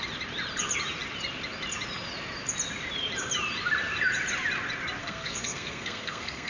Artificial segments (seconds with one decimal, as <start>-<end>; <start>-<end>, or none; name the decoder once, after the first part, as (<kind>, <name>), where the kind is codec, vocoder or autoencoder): 5.0-6.5 (codec, SNAC)